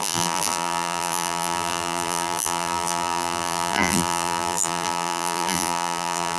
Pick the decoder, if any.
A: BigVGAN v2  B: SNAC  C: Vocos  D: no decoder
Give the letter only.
A